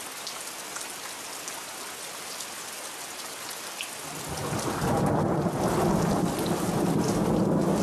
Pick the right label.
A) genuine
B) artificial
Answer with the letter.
A